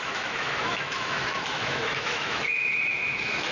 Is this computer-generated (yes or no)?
yes